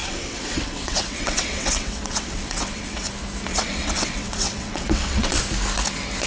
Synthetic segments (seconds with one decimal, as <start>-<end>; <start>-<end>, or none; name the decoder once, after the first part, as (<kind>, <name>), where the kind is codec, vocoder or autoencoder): 0.0-3.1 (vocoder, WaveNeXt); 3.5-5.4